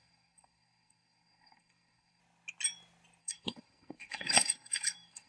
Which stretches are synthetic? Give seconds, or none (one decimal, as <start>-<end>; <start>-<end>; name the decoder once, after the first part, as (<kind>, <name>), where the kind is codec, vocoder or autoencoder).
0.0-2.2 (codec, SNAC); 3.2-5.3